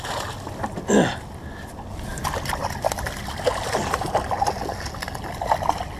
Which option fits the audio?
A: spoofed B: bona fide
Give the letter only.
B